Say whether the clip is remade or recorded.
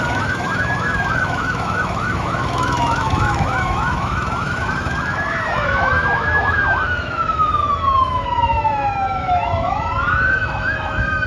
remade